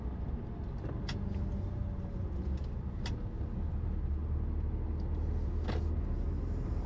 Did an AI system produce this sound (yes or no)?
no